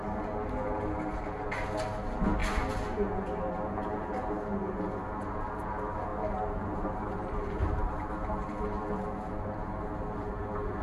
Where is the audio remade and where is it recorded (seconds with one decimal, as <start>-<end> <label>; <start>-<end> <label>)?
0.0-6.1 recorded; 6.1-8.1 remade; 8.1-10.8 recorded